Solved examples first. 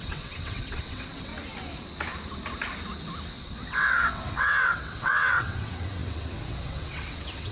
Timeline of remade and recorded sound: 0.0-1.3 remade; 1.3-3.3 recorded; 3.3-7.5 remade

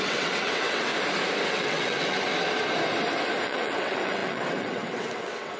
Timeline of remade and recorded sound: 0.0-0.9 remade; 0.9-1.5 recorded; 1.5-2.3 remade; 2.3-3.4 recorded; 3.4-5.6 remade